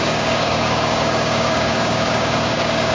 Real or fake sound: fake